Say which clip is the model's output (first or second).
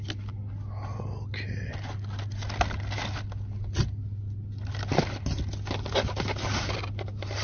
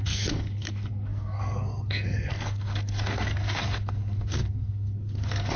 second